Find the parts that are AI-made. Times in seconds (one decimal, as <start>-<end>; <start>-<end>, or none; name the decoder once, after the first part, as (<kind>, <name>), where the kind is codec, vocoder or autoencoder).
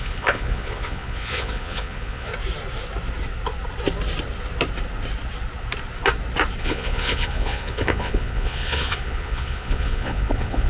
0.0-2.3 (vocoder, Vocos); 6.6-10.7